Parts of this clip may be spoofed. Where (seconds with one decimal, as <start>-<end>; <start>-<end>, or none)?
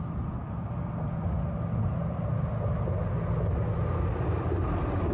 none